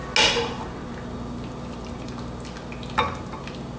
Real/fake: real